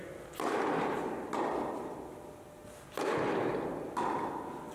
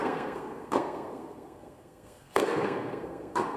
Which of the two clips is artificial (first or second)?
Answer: second